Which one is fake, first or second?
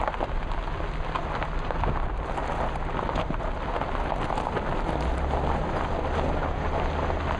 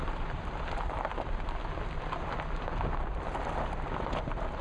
second